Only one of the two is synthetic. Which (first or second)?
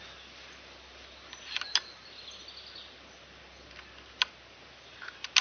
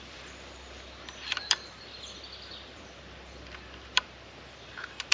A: second